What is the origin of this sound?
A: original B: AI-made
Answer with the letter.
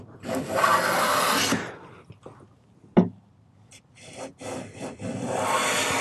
A